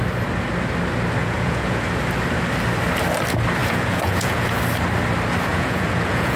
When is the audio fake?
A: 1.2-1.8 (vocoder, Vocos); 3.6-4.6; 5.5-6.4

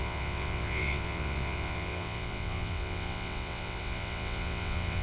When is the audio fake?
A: 0.0-5.0 (vocoder, WaveNeXt)

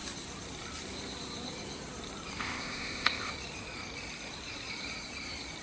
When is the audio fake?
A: 2.4-3.3 (codec, ZipCodec)

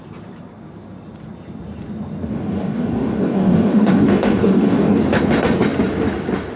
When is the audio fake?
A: 2.3-5.0 (codec, DAC)

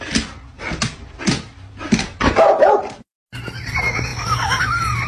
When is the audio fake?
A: none

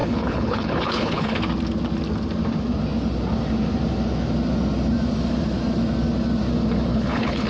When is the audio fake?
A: 0.0-1.4 (codec, HILCodec); 6.9-7.5

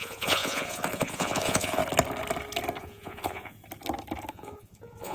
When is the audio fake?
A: 0.0-1.8 (vocoder, Vocos); 2.8-3.6; 4.3-5.1